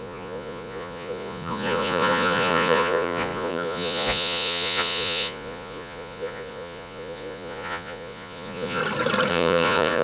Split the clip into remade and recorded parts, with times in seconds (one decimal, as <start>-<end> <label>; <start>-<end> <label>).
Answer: 0.0-8.8 remade; 8.8-9.3 recorded; 9.3-10.0 remade